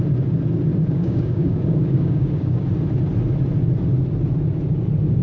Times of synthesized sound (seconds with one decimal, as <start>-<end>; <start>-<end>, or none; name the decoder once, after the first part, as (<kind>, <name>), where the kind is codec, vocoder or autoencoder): 0.7-2.6 (codec, DAC)